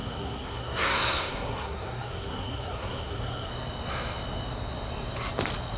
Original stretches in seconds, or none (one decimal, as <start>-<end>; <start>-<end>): 3.5-5.8